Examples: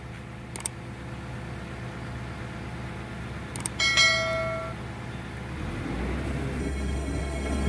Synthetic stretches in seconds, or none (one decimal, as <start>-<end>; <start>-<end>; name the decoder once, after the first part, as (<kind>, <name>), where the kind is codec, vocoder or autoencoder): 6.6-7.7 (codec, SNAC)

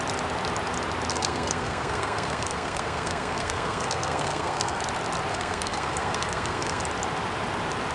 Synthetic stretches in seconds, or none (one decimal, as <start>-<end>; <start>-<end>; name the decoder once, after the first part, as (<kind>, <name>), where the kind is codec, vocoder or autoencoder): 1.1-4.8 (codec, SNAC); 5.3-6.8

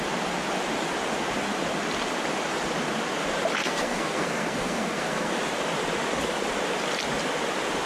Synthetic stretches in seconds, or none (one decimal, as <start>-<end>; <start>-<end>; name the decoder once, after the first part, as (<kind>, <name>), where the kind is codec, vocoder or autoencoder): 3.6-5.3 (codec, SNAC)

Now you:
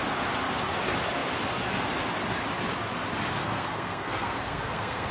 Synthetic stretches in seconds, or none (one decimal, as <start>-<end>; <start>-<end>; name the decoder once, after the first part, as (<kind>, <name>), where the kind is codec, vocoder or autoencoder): 3.4-5.1 (codec, SNAC)

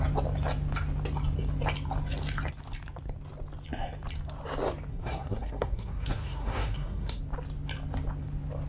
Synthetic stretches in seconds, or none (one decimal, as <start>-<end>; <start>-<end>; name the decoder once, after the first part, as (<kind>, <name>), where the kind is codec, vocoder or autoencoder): 4.9-7.2 (codec, SNAC)

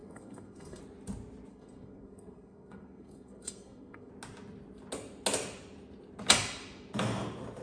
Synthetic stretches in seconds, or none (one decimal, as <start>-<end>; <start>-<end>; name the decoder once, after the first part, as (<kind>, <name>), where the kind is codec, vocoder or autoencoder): 0.0-0.8 (codec, SNAC); 1.5-4.1

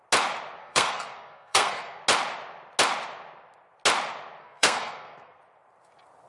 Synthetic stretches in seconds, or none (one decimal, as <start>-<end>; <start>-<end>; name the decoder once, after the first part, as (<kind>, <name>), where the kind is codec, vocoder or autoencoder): 0.6-2.0 (codec, SNAC); 4.4-5.4